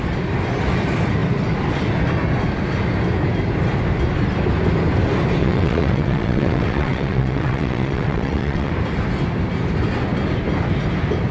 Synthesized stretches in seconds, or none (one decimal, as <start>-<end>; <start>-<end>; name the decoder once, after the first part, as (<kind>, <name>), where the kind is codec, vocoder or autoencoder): 5.4-8.7 (vocoder, WaveNeXt)